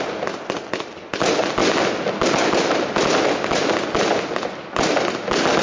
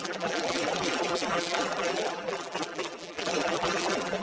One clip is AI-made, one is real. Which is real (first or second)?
first